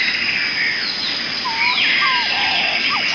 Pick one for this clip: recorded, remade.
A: recorded